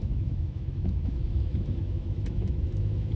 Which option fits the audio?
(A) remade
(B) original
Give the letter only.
A